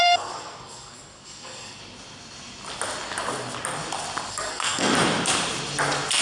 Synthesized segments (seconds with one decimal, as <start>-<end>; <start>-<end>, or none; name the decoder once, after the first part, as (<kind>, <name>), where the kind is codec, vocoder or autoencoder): 0.0-1.8 (codec, SNAC); 4.3-4.9